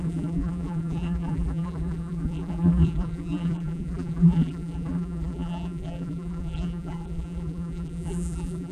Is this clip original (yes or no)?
no